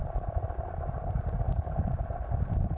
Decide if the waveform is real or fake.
real